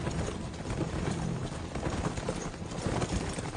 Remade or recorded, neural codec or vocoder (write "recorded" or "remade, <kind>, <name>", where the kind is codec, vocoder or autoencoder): remade, vocoder, BigVGAN v2